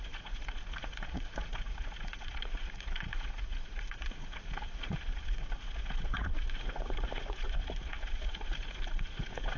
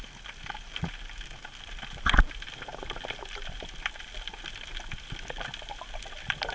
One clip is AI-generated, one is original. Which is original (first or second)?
second